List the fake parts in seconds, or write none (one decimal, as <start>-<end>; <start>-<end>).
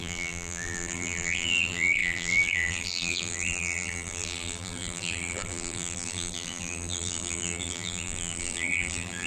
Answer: 0.0-9.3